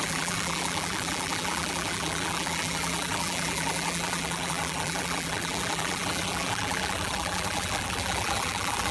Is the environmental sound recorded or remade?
remade